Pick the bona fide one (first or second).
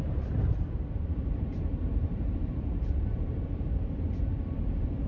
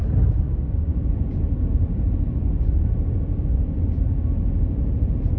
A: second